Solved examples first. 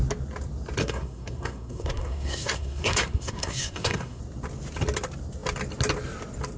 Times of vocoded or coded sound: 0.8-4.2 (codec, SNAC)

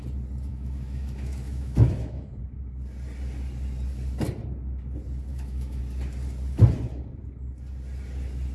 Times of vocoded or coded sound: 0.5-2.4 (autoencoder, DAC-VAE); 5.3-5.8

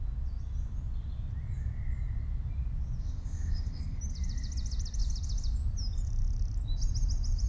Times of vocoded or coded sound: 3.0-4.0 (codec, ZipCodec)

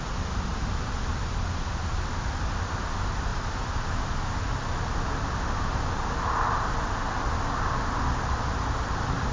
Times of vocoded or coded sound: none

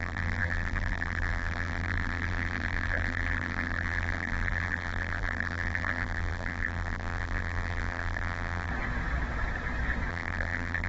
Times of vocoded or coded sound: 0.0-8.7 (vocoder, BigVGAN v2); 10.1-10.9

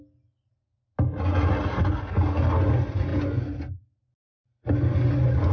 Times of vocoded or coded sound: none

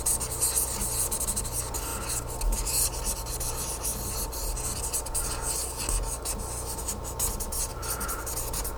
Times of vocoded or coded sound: 7.7-8.3 (vocoder, BigVGAN v2)

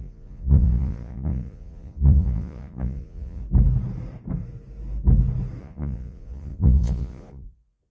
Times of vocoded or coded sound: 0.0-3.4 (vocoder, Vocos); 5.6-7.9